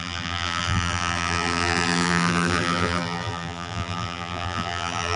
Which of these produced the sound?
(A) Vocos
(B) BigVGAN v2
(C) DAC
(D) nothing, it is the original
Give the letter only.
B